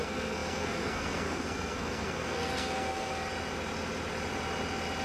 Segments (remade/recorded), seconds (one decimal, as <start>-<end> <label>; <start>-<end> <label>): 0.0-3.1 remade; 3.1-5.0 recorded